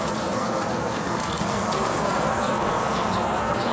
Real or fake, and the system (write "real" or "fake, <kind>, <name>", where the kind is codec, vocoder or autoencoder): fake, codec, SNAC